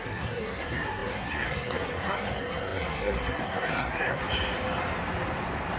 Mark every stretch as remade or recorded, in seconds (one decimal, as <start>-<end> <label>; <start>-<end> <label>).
0.0-4.2 remade; 4.2-5.8 recorded